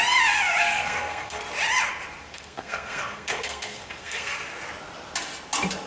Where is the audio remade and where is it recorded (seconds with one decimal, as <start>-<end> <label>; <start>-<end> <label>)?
0.0-0.6 recorded; 0.6-1.4 remade; 1.4-2.3 recorded; 2.3-4.4 remade; 4.4-5.9 recorded

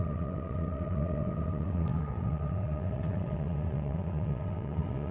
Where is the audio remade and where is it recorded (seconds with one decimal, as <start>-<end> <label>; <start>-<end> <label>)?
0.0-5.1 remade